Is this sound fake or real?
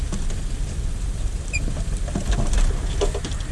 real